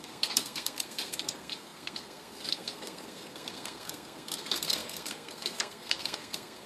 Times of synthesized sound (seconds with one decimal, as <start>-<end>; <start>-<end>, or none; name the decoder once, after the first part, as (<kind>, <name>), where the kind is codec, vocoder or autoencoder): 0.0-6.7 (codec, SNAC)